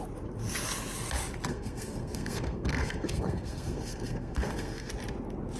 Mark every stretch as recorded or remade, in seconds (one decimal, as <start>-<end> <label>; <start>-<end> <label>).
0.0-1.5 recorded; 1.5-4.9 remade; 4.9-5.6 recorded